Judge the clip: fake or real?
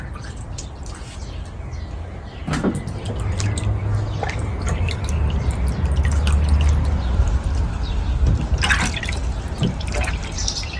real